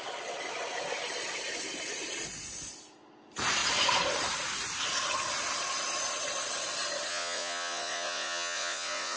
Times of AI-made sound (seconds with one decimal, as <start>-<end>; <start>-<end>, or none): 7.1-9.2